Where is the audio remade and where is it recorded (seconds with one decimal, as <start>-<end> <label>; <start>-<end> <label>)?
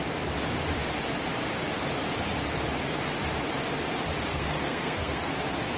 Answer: 0.0-4.3 recorded; 4.3-5.3 remade; 5.3-5.8 recorded